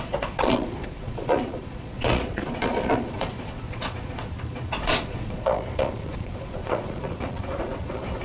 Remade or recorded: remade